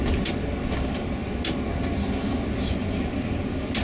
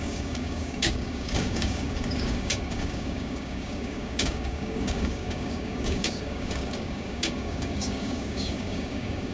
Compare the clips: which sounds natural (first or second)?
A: first